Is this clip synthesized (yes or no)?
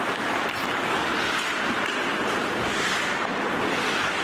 no